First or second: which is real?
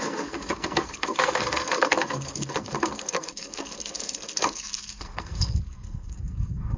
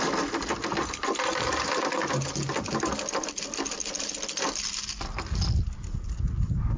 second